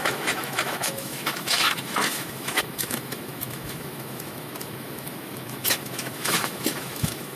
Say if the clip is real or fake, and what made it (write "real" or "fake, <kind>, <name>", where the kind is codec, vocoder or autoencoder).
fake, autoencoder, DAC-VAE